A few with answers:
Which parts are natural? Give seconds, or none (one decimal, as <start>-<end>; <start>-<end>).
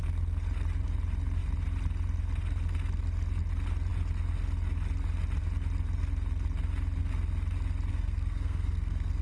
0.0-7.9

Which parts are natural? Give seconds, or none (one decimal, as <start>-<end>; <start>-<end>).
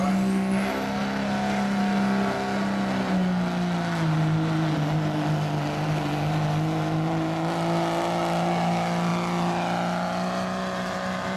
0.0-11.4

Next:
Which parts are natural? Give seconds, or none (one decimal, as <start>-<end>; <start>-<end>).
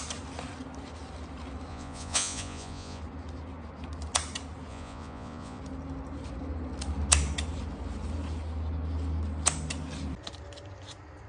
0.0-1.7; 3.0-4.7; 5.6-11.3